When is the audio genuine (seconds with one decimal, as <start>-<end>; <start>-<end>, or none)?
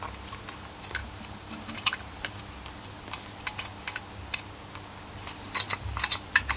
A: 0.0-1.0; 2.4-6.6